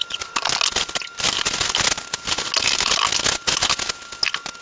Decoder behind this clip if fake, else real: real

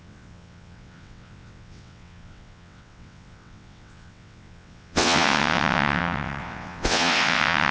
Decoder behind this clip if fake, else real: fake, vocoder, WaveNeXt